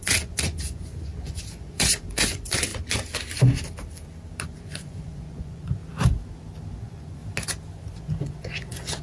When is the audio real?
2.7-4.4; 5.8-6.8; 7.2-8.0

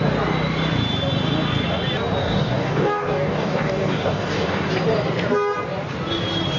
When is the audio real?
0.0-2.2; 4.7-6.6

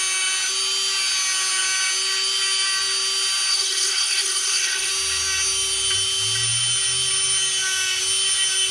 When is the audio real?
0.0-3.5; 4.9-8.7

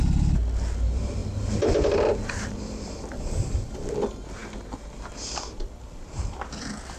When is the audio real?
0.0-7.0